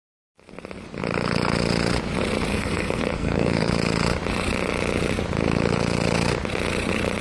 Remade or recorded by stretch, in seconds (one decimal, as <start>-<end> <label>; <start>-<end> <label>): 0.0-2.5 recorded; 2.5-3.7 remade; 3.7-7.2 recorded